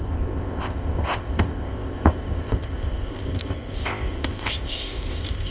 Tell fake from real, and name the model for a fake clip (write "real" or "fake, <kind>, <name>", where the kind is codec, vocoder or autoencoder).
fake, codec, ZipCodec